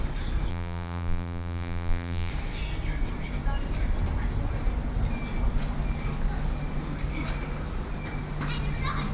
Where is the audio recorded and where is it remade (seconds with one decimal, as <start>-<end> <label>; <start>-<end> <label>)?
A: 0.0-0.5 recorded; 0.5-2.3 remade; 2.3-9.1 recorded